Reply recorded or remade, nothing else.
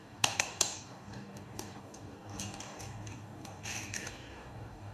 remade